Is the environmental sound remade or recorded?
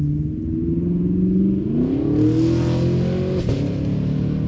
recorded